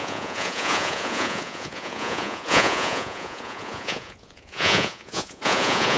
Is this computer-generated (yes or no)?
yes